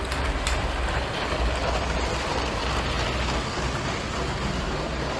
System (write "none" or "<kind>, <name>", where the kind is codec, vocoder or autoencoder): none